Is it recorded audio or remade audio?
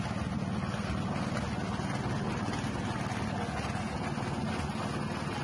recorded